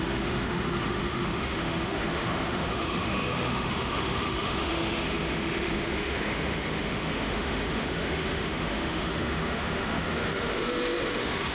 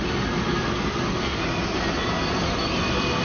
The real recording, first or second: second